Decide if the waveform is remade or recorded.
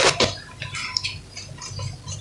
recorded